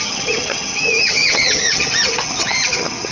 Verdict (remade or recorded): remade